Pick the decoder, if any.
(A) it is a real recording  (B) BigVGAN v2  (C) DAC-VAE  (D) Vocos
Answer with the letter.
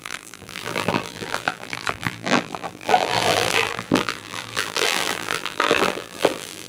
B